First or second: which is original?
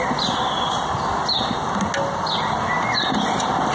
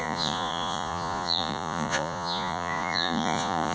first